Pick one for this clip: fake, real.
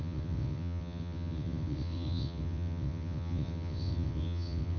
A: fake